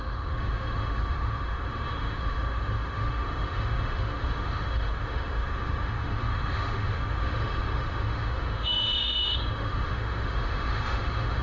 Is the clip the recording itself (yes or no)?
no